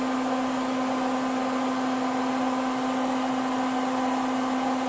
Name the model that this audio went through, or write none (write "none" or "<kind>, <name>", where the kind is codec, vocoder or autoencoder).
none